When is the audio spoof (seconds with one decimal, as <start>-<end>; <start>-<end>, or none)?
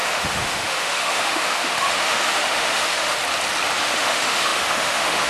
0.0-3.2; 3.8-5.3